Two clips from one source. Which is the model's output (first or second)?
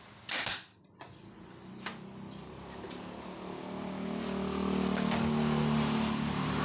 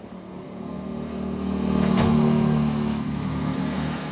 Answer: second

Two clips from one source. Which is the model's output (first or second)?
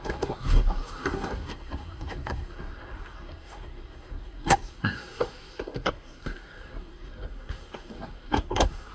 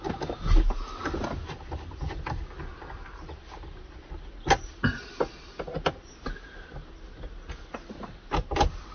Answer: first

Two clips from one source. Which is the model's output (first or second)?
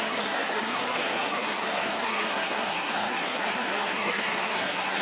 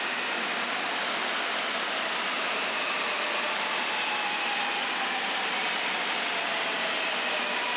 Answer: first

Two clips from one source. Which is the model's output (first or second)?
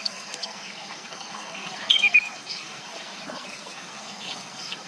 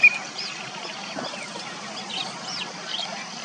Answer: first